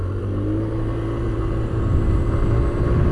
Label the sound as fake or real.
fake